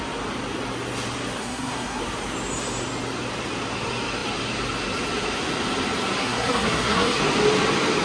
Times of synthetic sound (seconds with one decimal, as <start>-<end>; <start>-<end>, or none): 1.4-2.0; 6.2-7.2